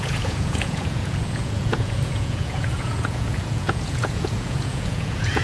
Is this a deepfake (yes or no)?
yes